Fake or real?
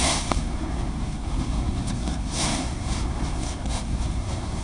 fake